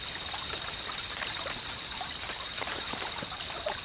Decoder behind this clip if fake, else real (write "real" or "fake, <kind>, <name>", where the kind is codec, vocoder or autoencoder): real